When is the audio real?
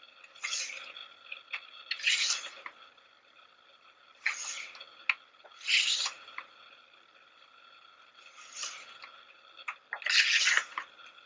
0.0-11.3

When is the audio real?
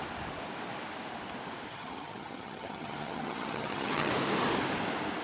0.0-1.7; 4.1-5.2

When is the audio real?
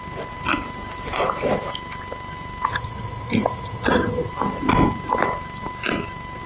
0.0-2.7; 4.3-6.5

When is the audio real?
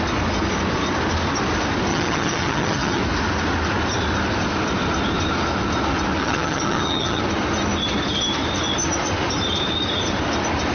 0.0-1.9; 3.0-6.2; 7.2-10.7